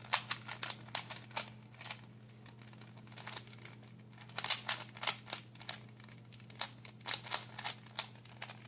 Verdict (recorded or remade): recorded